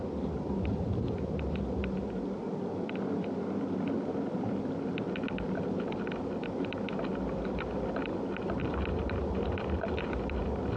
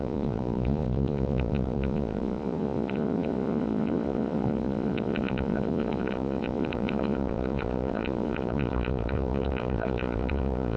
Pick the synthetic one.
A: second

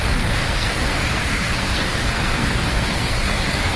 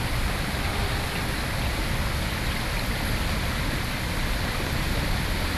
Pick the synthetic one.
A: first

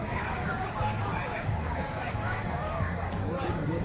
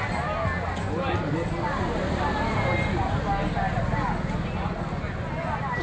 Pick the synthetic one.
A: first